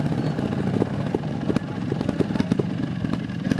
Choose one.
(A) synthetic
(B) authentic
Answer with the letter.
B